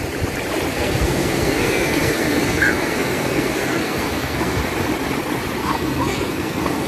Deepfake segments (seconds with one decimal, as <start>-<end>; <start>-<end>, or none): 0.7-4.6; 5.6-6.9

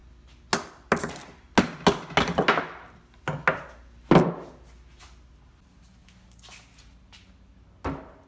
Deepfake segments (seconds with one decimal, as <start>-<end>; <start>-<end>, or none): none

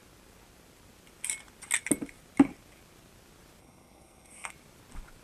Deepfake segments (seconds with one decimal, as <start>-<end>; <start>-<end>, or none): 3.6-4.5

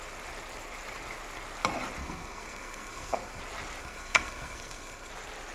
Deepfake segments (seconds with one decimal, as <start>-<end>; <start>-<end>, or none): 2.0-3.4; 3.8-5.1

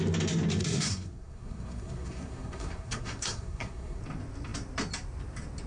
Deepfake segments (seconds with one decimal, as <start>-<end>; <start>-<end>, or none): 0.6-4.0

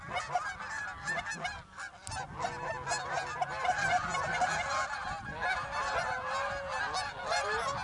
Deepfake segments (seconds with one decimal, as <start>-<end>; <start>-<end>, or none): none

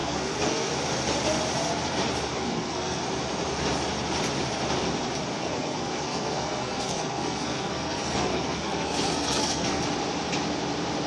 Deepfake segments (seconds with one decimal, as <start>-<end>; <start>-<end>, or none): 0.0-0.7; 2.3-3.0; 5.4-9.8

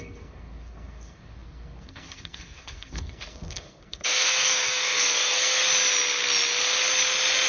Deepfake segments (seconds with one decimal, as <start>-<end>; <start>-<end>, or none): 0.0-5.6